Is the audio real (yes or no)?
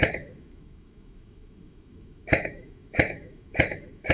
no